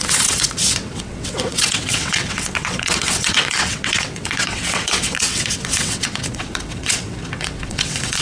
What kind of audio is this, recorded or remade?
remade